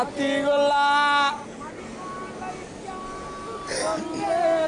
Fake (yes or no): no